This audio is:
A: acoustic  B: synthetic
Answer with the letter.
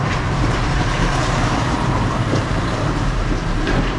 B